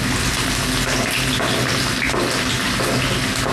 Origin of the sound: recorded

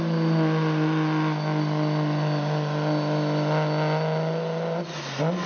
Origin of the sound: recorded